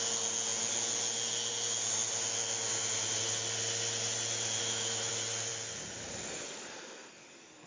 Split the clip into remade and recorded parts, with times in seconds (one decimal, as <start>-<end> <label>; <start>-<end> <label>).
0.0-4.6 recorded; 4.6-5.1 remade; 5.1-7.7 recorded